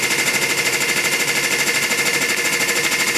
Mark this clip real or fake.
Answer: real